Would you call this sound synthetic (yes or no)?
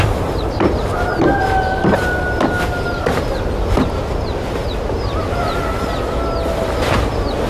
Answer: no